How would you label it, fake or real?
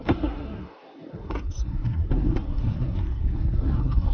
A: fake